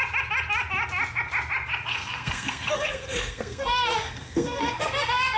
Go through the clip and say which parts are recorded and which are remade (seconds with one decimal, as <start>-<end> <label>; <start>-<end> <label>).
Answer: 0.0-1.9 recorded; 1.9-5.4 remade